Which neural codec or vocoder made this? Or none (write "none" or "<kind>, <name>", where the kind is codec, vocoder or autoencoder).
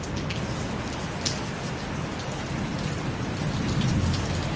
none